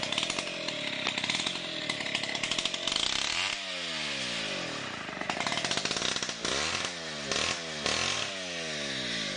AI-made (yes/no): no